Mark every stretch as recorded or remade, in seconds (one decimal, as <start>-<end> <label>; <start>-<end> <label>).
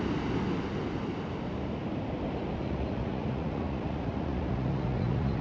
0.0-2.6 recorded; 2.6-5.4 remade